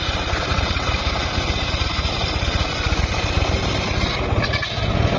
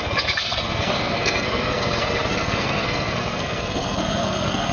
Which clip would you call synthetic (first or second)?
second